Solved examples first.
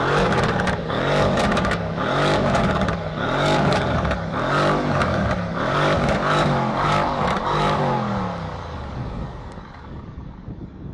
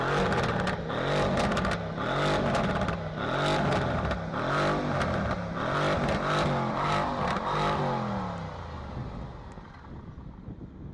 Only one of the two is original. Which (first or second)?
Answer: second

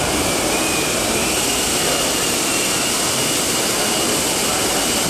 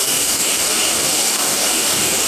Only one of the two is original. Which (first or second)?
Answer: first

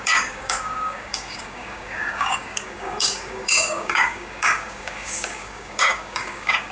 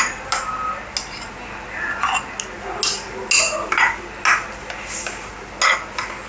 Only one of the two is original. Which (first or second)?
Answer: second